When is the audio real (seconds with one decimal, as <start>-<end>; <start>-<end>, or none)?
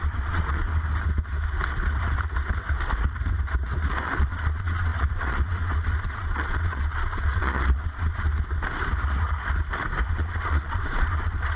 0.7-4.2; 8.3-10.1